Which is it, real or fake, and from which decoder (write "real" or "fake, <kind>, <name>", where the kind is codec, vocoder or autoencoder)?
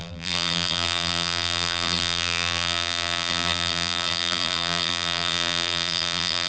fake, vocoder, BigVGAN v2